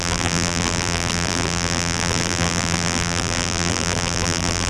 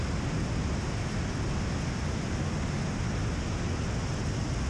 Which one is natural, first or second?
second